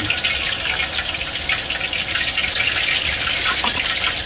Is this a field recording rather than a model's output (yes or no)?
yes